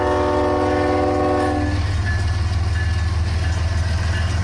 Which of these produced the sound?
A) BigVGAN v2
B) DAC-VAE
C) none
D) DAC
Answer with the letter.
C